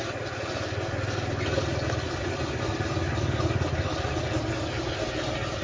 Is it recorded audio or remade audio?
recorded